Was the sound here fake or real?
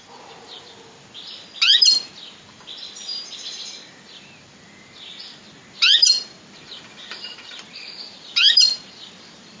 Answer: real